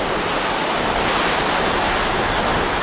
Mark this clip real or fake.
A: real